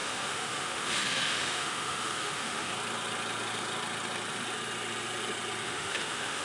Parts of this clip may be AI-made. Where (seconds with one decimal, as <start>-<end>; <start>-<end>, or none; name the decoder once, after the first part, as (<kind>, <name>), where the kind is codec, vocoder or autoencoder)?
0.0-2.7 (autoencoder, DAC-VAE); 5.6-6.4